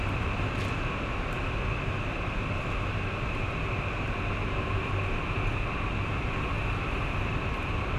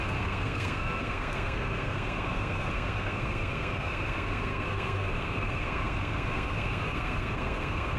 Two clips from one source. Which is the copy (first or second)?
second